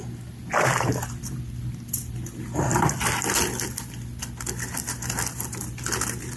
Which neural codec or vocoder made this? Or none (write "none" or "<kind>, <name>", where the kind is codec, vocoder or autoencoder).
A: none